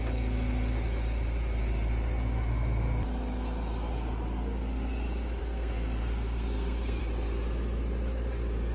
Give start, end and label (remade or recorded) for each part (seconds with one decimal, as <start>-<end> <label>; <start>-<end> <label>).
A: 0.0-5.4 recorded; 5.4-7.0 remade; 7.0-8.7 recorded